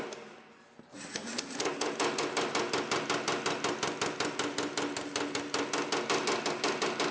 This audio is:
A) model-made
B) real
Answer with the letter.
B